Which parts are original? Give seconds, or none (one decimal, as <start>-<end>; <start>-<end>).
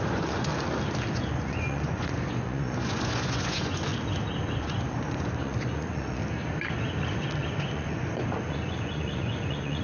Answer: 0.5-1.1; 3.9-4.6; 6.2-7.5